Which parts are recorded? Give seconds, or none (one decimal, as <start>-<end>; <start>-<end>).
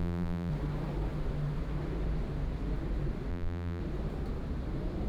0.5-3.3; 3.8-5.1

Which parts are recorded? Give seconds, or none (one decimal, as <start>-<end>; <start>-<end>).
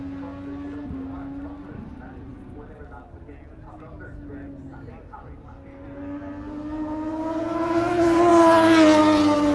0.0-9.5